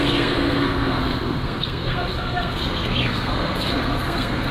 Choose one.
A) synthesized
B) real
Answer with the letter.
A